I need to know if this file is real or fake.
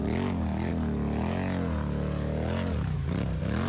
real